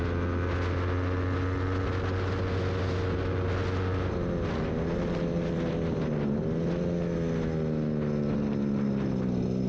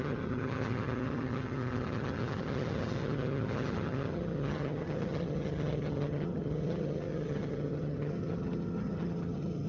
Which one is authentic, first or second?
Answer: first